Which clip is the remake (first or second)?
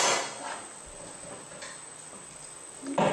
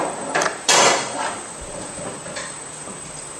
second